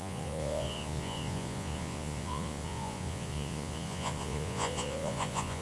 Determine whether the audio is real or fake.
fake